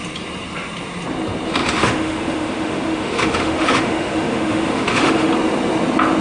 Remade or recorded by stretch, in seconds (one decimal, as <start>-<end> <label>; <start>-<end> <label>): 0.0-1.6 recorded; 1.6-5.3 remade; 5.3-6.2 recorded